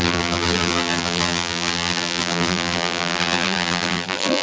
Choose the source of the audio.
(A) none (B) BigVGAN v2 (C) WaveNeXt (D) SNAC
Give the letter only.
B